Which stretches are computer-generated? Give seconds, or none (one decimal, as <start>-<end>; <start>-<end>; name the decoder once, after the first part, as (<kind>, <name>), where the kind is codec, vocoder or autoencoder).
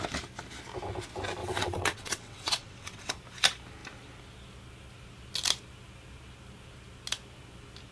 1.4-3.1 (vocoder, WaveNeXt)